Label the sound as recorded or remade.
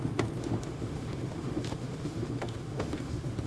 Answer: remade